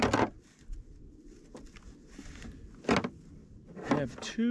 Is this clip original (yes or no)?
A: yes